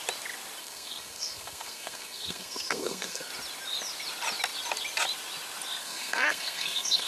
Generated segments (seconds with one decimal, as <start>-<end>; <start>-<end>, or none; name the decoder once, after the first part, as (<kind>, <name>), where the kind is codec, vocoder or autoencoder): 0.6-3.3 (codec, SNAC); 5.8-7.1